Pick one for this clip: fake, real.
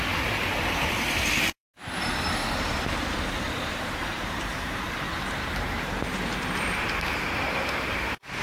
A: fake